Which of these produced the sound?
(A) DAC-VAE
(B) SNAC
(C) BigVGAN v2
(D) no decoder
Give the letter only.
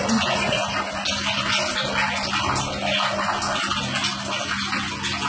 D